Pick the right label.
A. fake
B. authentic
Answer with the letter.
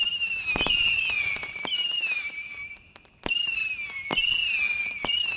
B